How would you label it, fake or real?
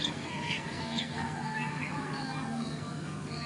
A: fake